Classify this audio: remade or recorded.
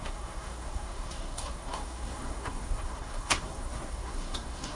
remade